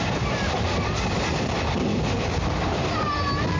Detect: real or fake real